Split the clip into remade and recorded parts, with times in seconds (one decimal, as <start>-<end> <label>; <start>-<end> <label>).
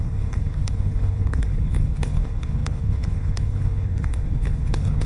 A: 0.0-5.1 remade